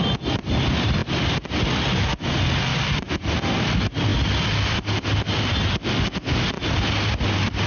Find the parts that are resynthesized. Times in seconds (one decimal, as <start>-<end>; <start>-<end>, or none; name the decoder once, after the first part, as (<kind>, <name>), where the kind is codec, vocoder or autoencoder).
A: 2.7-3.4 (vocoder, BigVGAN v2)